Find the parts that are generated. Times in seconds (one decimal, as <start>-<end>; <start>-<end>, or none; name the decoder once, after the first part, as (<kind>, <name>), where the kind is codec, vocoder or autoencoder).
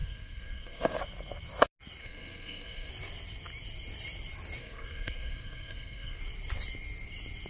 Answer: 0.0-1.0 (codec, SNAC); 2.0-2.9; 4.6-6.2